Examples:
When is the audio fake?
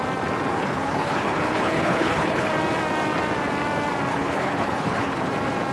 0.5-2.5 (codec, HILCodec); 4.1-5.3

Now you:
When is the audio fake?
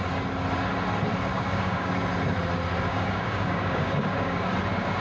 1.3-1.9 (codec, DAC); 2.9-4.4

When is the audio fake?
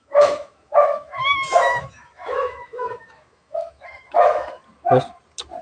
0.0-4.6 (autoencoder, DAC-VAE)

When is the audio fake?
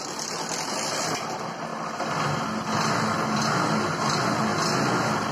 none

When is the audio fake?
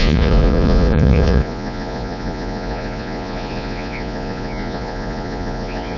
0.0-6.0 (vocoder, Vocos)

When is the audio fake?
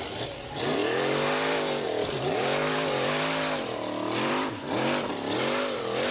0.8-4.5 (vocoder, BigVGAN v2)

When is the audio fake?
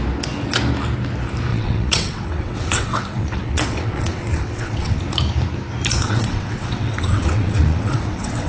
1.5-5.0 (vocoder, WaveNeXt); 6.0-8.5